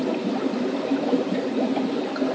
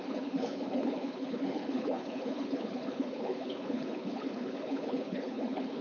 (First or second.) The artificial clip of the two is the second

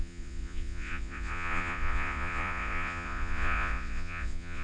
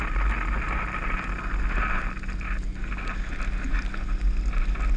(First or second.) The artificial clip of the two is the first